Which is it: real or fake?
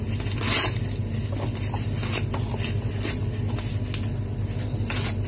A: real